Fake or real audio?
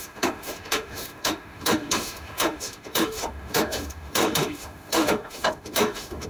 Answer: fake